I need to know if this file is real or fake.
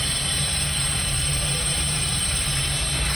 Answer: fake